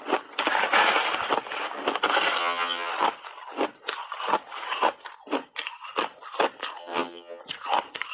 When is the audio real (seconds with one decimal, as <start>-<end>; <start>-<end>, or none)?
0.0-2.4; 2.9-6.8; 7.4-8.1